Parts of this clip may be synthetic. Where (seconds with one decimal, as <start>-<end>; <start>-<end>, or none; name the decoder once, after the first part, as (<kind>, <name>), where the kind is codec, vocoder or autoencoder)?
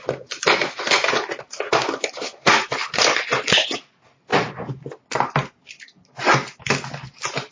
none